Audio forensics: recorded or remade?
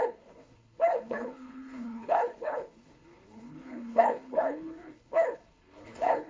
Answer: remade